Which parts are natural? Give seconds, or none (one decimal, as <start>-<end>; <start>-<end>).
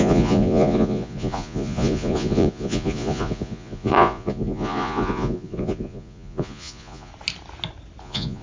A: 7.1-8.0